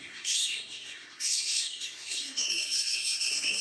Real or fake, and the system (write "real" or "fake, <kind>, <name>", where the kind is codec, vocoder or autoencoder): fake, codec, SNAC